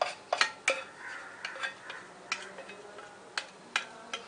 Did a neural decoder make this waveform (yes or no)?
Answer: no